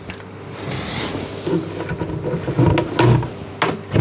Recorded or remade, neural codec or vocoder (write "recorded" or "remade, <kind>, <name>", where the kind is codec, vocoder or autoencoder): recorded